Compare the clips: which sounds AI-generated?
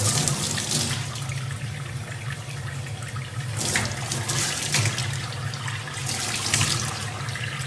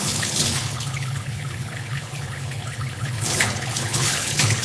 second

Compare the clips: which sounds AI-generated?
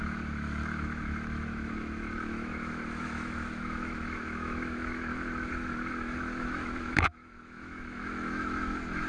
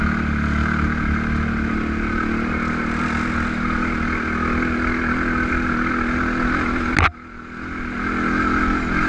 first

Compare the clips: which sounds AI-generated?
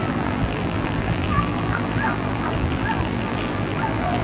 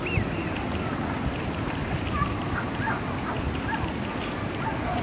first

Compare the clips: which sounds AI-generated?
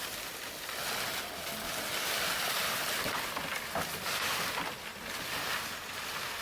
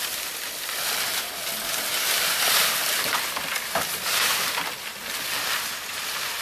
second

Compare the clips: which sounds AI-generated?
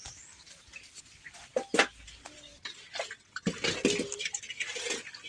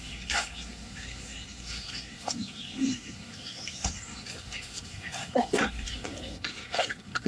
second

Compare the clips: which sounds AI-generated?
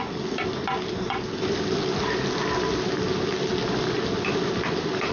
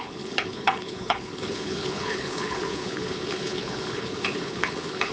second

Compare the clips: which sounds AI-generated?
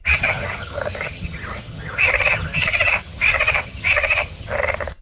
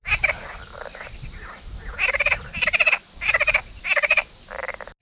first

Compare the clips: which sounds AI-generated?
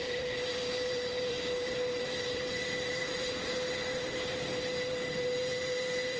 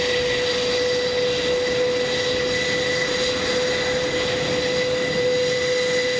first